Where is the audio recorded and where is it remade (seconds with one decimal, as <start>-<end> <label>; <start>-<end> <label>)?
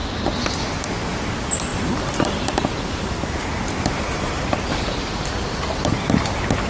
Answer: 0.0-1.7 recorded; 1.7-3.4 remade; 3.4-6.7 recorded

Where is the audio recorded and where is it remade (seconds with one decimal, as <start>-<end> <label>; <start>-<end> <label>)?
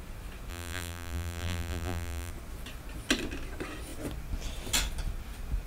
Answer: 0.0-0.5 recorded; 0.5-2.3 remade; 2.3-5.7 recorded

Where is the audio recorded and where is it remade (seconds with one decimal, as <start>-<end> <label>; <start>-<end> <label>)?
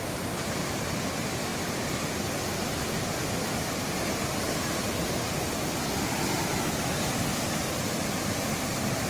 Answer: 0.0-1.5 remade; 1.5-6.8 recorded; 6.8-7.3 remade; 7.3-8.0 recorded; 8.0-9.1 remade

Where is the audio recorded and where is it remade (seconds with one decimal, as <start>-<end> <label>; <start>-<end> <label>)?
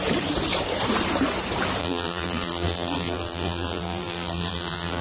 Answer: 0.0-1.8 recorded; 1.8-5.0 remade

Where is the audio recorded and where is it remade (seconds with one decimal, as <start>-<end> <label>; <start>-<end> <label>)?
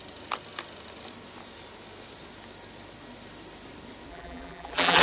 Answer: 0.0-4.1 recorded; 4.1-5.0 remade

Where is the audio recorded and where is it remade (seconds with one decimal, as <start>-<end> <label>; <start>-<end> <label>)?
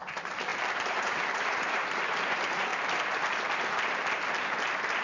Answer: 0.0-2.7 remade; 2.7-5.0 recorded